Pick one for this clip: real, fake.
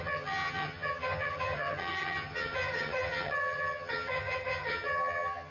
fake